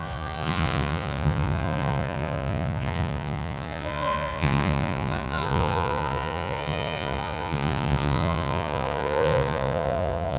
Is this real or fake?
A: fake